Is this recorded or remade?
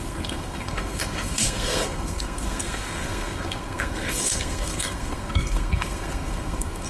remade